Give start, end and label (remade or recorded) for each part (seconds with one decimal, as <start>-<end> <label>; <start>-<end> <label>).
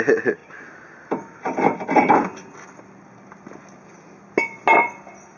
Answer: 0.0-5.4 recorded